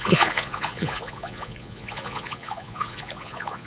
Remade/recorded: remade